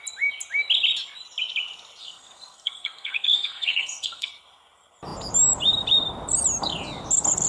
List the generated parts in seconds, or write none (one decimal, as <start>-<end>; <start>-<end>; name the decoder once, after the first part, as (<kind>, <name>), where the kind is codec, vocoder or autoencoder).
2.0-4.3 (codec, SNAC)